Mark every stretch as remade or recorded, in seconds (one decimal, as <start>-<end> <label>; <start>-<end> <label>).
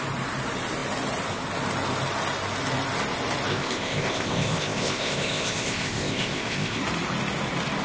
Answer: 0.0-3.5 recorded; 3.5-6.8 remade; 6.8-7.8 recorded